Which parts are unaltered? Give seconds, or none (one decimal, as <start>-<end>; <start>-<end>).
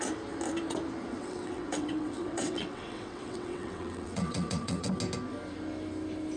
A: 0.0-1.1; 4.9-6.4